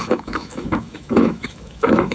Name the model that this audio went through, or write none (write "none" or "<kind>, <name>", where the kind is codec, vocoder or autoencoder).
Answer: autoencoder, DAC-VAE